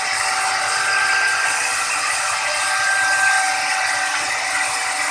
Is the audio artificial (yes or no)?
no